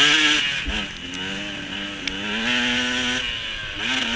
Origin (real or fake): real